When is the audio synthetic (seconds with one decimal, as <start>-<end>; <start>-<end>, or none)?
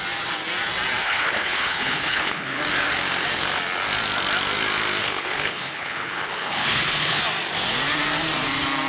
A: 1.0-2.6; 5.0-7.2